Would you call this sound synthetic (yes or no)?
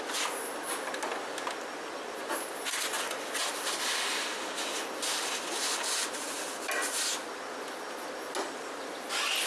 no